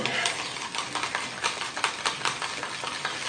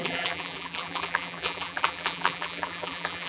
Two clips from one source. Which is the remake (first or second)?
second